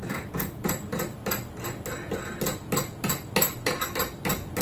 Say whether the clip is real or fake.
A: real